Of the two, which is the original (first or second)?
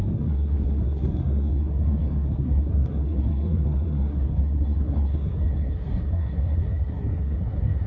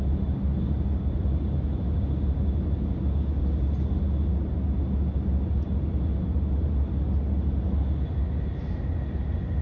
second